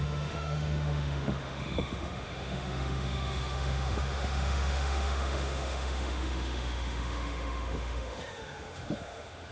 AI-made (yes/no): yes